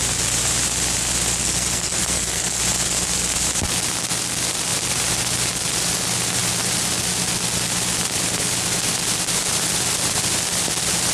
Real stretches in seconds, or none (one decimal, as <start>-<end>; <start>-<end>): 0.0-1.4; 2.6-11.1